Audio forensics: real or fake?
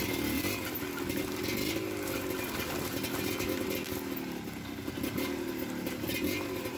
real